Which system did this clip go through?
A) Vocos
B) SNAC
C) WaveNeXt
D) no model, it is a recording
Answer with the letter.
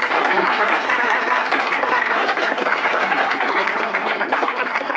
B